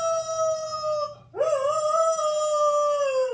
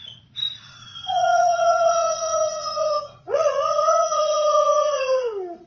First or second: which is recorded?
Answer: first